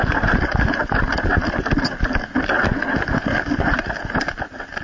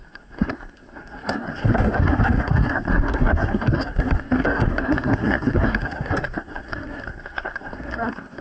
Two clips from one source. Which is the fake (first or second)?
second